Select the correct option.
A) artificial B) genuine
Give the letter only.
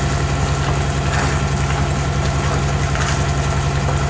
B